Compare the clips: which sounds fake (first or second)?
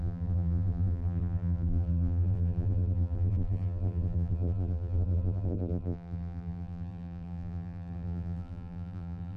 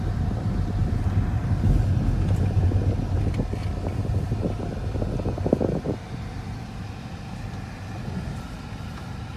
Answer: first